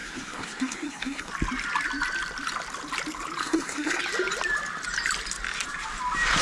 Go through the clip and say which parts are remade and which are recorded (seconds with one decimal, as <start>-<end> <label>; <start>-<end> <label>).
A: 0.0-1.3 remade; 1.3-3.4 recorded; 3.4-4.0 remade; 4.0-6.4 recorded